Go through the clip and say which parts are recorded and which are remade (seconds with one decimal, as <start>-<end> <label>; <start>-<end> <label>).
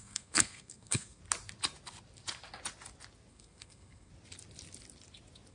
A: 0.0-1.2 remade; 1.2-3.3 recorded; 3.3-4.1 remade; 4.1-5.5 recorded